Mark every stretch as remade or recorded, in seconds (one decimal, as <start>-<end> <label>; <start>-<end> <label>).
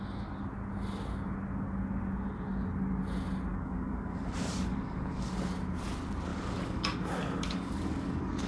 0.0-3.5 recorded; 3.5-5.5 remade; 5.5-6.3 recorded; 6.3-8.5 remade